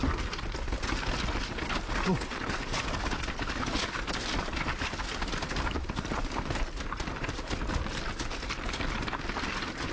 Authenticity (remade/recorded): recorded